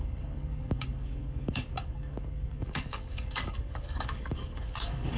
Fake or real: fake